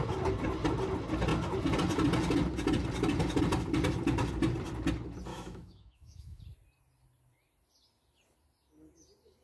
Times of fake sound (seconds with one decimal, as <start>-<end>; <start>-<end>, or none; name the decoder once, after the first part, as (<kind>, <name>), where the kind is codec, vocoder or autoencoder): 5.3-6.4 (autoencoder, DAC-VAE)